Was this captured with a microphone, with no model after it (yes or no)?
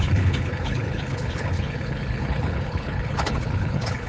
no